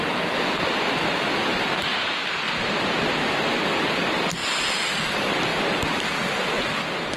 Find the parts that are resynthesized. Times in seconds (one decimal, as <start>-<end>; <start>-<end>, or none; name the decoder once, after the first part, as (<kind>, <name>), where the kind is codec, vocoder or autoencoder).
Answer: 1.9-3.4 (vocoder, BigVGAN v2); 4.4-5.0